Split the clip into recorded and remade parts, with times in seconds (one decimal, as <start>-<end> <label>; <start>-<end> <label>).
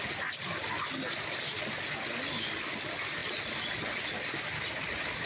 0.0-5.3 recorded